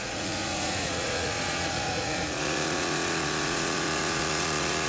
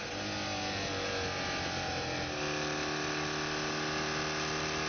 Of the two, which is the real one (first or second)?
second